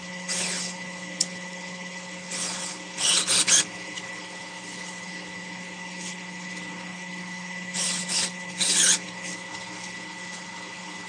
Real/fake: fake